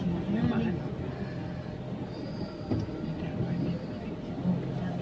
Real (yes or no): yes